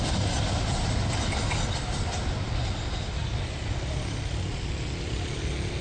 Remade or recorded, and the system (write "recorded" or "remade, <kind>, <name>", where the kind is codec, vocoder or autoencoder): recorded